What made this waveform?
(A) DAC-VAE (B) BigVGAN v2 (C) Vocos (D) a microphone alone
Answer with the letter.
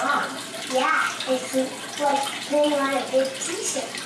D